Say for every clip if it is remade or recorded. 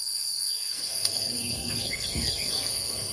remade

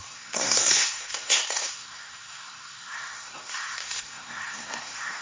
remade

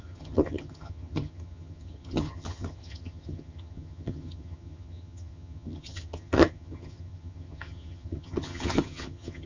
remade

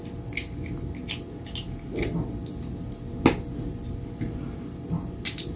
recorded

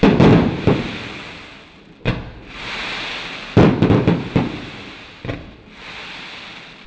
recorded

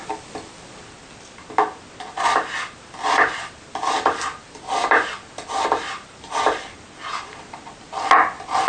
recorded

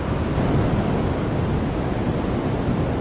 recorded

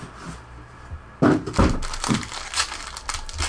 recorded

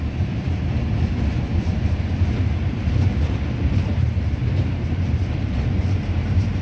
remade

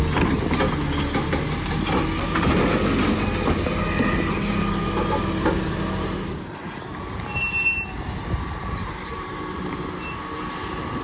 recorded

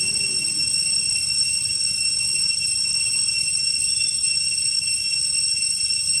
recorded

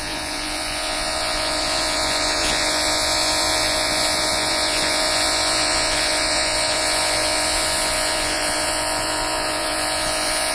remade